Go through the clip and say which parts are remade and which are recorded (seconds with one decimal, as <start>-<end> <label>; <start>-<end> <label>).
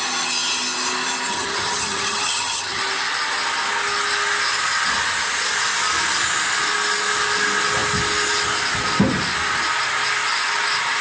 0.0-1.3 recorded; 1.3-2.8 remade; 2.8-11.0 recorded